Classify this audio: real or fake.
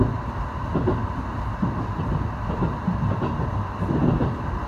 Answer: real